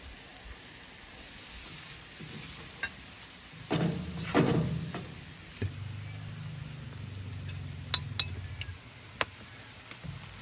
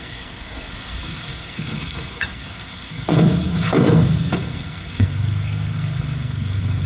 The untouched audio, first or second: first